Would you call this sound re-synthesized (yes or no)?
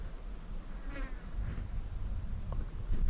no